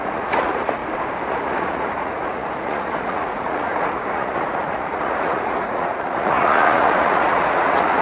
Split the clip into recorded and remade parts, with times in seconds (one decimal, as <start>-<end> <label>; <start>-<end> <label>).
0.0-0.8 remade; 0.8-1.3 recorded; 1.3-8.0 remade